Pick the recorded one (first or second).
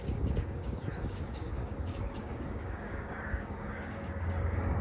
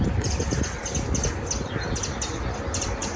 second